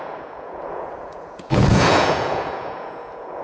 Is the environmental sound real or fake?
fake